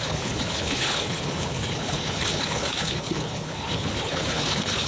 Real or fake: fake